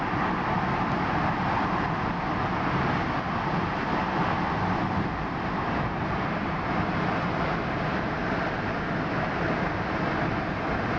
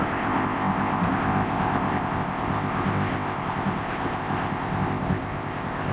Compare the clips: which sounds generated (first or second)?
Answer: second